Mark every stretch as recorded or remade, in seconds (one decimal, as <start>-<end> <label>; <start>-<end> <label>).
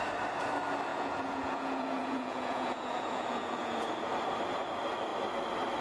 0.0-0.9 recorded; 0.9-3.9 remade; 3.9-5.8 recorded